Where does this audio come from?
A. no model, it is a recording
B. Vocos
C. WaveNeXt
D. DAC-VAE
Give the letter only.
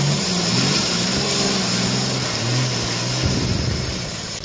A